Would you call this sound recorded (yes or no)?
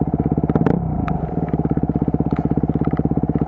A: yes